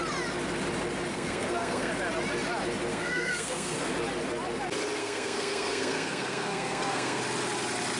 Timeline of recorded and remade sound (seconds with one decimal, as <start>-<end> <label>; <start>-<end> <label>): 0.0-1.1 recorded; 1.1-1.9 remade; 1.9-2.9 recorded; 2.9-3.9 remade; 3.9-5.0 recorded; 5.0-7.2 remade; 7.2-8.0 recorded